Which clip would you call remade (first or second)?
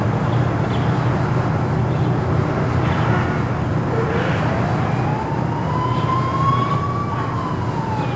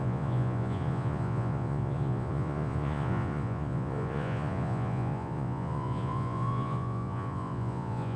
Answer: second